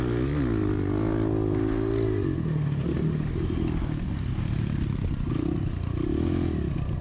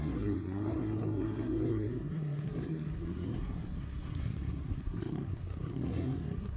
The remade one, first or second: second